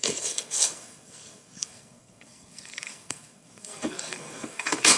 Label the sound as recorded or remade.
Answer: remade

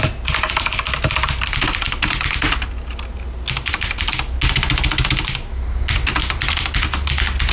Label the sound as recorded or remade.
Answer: recorded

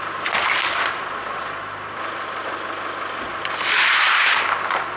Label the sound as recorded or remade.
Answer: recorded